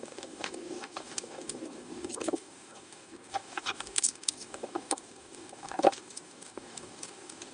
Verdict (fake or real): fake